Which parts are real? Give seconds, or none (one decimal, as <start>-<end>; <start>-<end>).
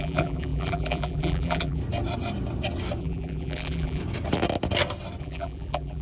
1.8-3.0; 4.0-5.2